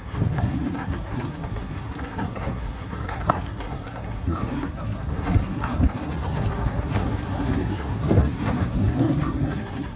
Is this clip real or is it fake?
fake